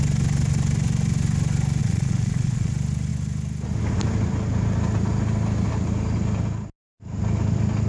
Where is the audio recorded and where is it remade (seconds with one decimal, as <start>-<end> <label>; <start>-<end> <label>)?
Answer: 0.0-1.8 recorded; 1.8-2.7 remade; 2.7-7.9 recorded